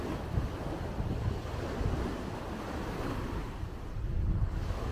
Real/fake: real